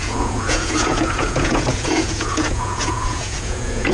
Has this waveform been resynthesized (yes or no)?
yes